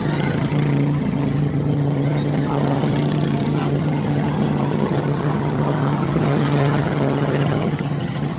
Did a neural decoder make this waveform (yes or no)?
yes